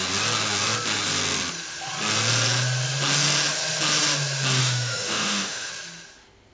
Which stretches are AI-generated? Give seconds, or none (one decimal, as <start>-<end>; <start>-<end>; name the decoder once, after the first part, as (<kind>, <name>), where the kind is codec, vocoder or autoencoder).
4.6-5.7 (autoencoder, DAC-VAE)